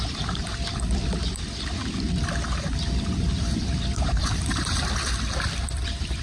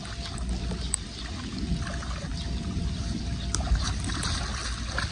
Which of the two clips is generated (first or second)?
first